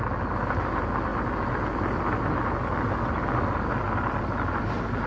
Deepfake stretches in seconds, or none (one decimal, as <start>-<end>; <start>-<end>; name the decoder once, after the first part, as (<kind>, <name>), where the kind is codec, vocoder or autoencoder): none